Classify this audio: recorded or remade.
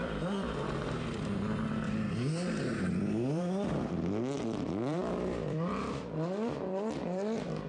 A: remade